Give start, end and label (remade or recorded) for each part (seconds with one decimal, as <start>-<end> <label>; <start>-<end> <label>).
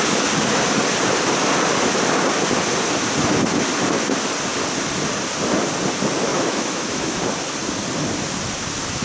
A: 0.0-6.3 recorded; 6.3-7.2 remade; 7.2-9.0 recorded